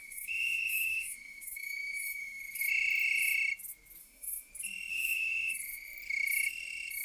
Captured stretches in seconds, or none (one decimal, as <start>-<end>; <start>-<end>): 2.4-4.0; 4.5-4.9; 5.5-7.0